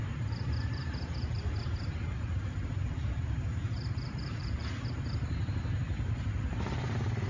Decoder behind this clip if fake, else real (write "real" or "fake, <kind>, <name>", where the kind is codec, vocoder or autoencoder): fake, vocoder, BigVGAN v2